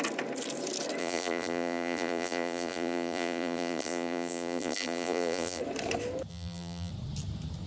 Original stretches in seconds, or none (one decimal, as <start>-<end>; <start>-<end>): 0.0-1.0; 5.6-6.3; 6.9-7.7